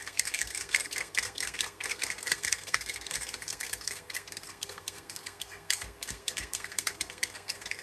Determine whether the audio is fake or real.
fake